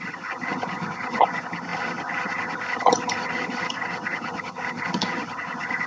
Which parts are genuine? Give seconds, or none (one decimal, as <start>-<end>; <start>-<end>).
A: none